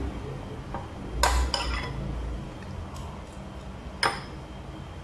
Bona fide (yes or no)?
yes